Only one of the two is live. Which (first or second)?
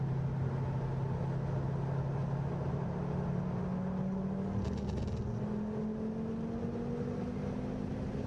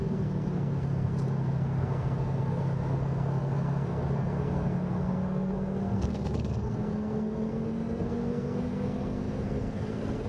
first